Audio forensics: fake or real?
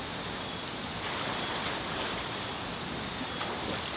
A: real